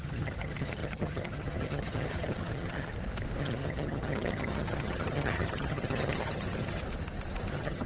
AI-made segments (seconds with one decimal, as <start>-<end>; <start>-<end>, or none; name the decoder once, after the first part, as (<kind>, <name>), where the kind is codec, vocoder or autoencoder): 0.0-2.9 (vocoder, HiFi-GAN); 3.4-6.8; 7.5-7.9